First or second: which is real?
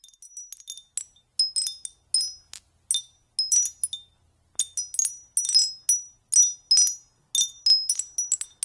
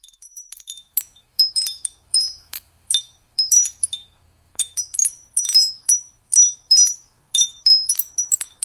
first